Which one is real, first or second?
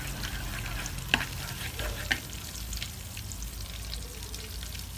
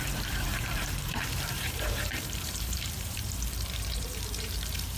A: first